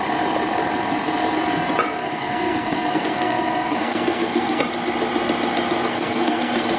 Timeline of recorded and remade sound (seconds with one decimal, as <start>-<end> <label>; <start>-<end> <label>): 0.0-2.0 recorded; 2.0-4.6 remade; 4.6-5.9 recorded; 5.9-6.8 remade